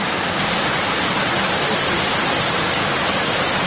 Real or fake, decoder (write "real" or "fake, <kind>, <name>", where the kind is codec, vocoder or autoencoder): fake, vocoder, BigVGAN v2